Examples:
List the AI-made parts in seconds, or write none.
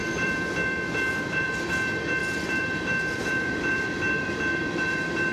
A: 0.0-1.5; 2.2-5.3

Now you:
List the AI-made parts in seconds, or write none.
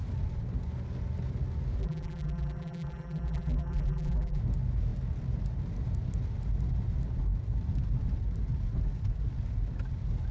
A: 1.8-4.4